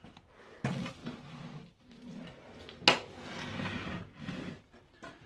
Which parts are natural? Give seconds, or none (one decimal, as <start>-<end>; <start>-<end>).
0.0-5.3